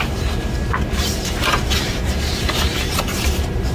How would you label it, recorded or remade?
remade